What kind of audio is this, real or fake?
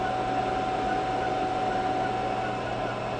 real